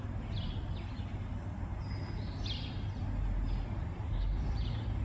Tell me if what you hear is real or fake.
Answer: real